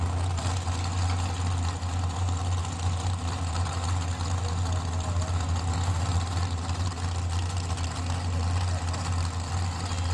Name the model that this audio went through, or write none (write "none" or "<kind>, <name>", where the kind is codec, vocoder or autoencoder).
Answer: none